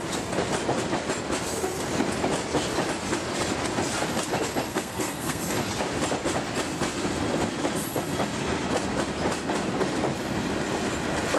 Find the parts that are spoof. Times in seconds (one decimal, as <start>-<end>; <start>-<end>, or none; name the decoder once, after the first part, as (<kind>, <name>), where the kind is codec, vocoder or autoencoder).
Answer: 4.7-5.4 (codec, SNAC)